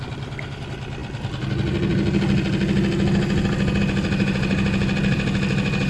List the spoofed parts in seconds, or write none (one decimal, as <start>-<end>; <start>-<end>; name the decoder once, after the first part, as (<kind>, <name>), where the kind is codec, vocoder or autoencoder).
none